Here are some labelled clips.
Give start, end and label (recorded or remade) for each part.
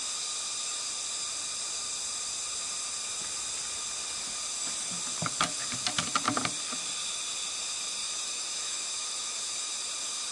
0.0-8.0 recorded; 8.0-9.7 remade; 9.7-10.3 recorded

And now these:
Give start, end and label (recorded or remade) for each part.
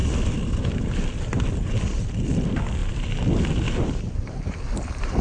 0.0-5.2 recorded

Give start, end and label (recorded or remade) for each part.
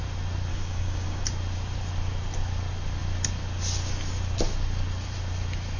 0.0-0.5 recorded; 0.5-1.2 remade; 1.2-5.8 recorded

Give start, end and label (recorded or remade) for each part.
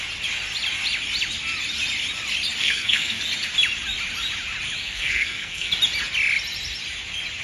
0.0-2.6 recorded; 2.6-3.2 remade; 3.2-4.8 recorded; 4.8-5.7 remade; 5.7-7.4 recorded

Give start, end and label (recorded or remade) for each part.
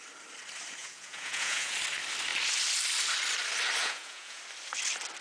0.0-0.8 recorded; 0.8-1.7 remade; 1.7-3.8 recorded; 3.8-4.4 remade; 4.4-5.2 recorded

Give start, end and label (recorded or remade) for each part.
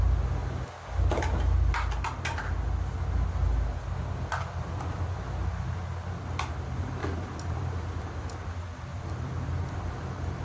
0.0-7.0 recorded; 7.0-8.1 remade; 8.1-8.9 recorded; 8.9-10.4 remade